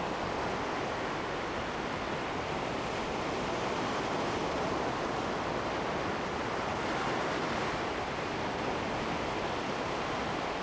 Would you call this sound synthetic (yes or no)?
no